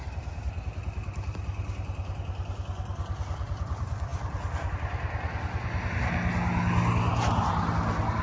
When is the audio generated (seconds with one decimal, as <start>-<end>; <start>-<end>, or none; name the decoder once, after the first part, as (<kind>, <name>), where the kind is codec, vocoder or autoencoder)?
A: none